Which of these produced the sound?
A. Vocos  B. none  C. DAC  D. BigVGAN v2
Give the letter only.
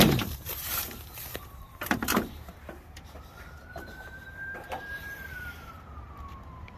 D